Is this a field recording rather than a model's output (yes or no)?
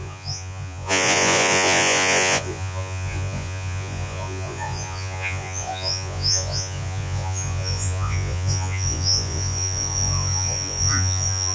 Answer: no